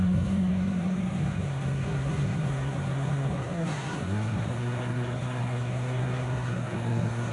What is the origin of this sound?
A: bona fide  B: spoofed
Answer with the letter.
B